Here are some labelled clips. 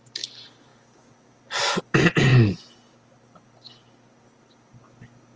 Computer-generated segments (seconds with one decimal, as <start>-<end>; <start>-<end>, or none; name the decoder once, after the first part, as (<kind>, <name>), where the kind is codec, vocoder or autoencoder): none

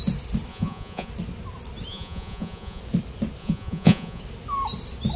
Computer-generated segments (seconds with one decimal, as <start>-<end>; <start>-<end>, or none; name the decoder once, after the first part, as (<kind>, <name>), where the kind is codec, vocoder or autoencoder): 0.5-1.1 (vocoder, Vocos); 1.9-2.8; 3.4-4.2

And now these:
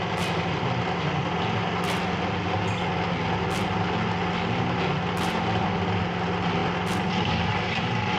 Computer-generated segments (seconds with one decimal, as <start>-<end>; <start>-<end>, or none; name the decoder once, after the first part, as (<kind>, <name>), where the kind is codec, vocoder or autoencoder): none

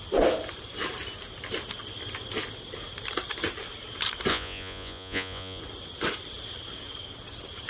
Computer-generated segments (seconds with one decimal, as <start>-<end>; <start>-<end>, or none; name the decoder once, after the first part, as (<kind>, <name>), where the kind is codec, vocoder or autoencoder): 4.3-5.6 (vocoder, Vocos)

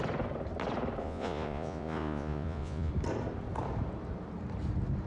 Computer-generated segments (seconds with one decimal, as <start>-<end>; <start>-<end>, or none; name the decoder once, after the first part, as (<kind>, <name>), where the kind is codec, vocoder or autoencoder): 1.0-2.9 (vocoder, Vocos)

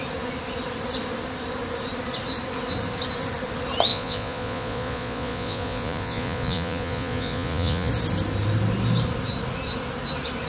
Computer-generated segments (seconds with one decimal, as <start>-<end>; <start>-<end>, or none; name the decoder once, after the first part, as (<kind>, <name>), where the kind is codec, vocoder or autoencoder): 3.9-7.9 (vocoder, Vocos)